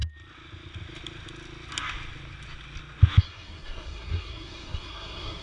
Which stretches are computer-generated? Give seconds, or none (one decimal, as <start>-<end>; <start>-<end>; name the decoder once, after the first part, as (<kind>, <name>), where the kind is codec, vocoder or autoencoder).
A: 3.2-5.4 (codec, SNAC)